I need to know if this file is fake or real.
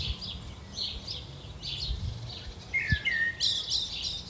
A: real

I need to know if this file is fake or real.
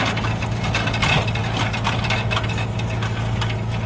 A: real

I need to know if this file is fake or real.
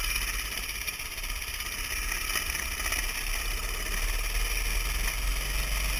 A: real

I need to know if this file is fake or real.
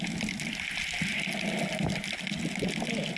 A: real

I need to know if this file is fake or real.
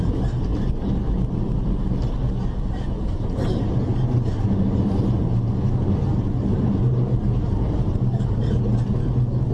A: real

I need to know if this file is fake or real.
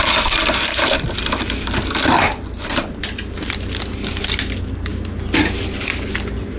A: real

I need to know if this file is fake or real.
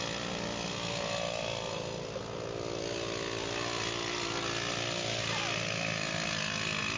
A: real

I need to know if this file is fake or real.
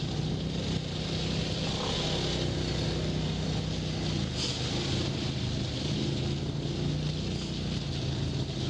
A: real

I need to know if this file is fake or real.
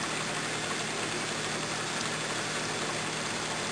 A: real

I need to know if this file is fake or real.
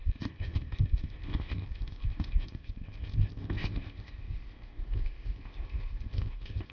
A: fake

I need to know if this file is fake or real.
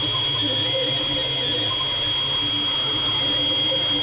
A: real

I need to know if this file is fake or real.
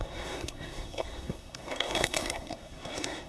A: fake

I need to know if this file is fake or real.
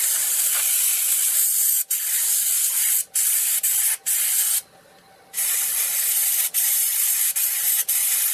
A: real